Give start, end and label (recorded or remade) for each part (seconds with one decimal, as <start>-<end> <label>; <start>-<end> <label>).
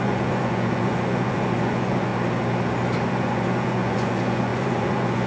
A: 0.0-2.1 remade; 2.1-3.1 recorded; 3.1-5.3 remade